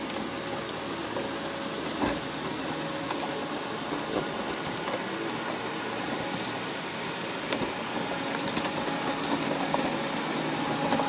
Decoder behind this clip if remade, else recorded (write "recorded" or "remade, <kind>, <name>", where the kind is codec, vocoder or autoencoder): recorded